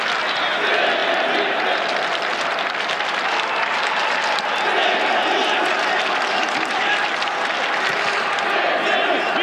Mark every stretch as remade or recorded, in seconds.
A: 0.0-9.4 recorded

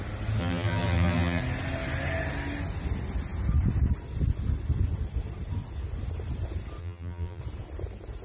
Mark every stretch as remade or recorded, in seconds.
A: 0.0-0.4 recorded; 0.4-1.4 remade; 1.4-6.8 recorded; 6.8-7.4 remade; 7.4-8.2 recorded

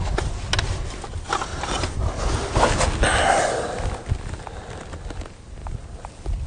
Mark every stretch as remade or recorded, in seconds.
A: 0.0-1.5 recorded; 1.5-2.2 remade; 2.2-5.6 recorded; 5.6-6.1 remade; 6.1-6.5 recorded

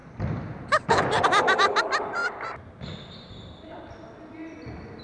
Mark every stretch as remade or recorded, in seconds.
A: 0.0-5.0 remade

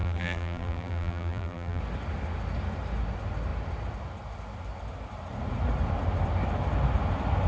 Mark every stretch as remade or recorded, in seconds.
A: 0.0-1.8 remade; 1.8-7.5 recorded